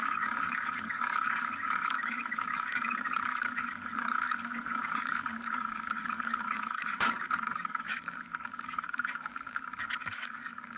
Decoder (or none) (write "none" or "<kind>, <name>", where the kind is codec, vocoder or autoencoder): codec, DAC